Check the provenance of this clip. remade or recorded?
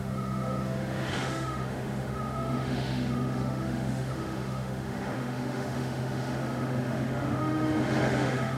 remade